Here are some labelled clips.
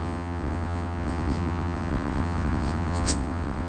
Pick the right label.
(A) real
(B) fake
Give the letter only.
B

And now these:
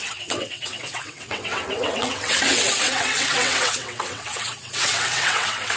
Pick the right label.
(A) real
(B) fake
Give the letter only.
B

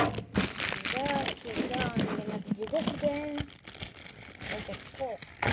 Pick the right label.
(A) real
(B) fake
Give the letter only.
A